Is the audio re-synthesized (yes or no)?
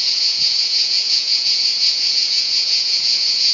yes